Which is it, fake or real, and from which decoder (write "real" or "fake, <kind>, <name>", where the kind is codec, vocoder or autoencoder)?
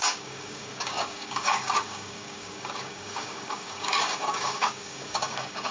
fake, codec, DAC